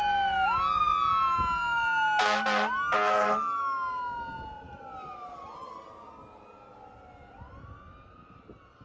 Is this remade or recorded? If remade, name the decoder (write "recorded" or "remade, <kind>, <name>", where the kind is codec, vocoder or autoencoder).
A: recorded